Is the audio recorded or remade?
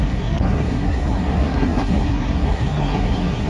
remade